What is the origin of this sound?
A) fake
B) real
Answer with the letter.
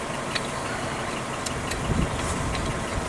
B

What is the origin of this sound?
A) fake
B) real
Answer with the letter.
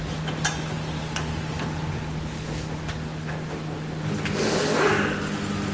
B